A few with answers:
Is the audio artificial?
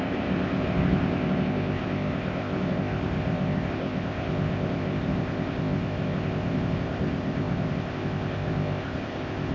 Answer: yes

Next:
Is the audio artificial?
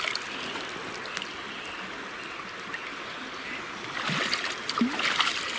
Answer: no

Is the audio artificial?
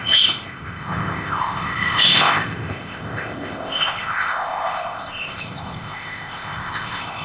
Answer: yes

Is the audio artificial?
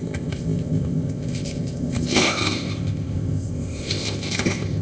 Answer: yes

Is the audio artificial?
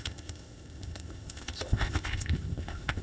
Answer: yes